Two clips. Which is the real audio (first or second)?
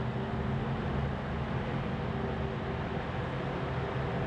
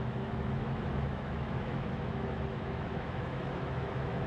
first